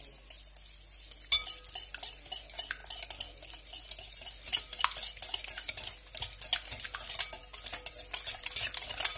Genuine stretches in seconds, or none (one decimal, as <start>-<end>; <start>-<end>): 0.0-9.2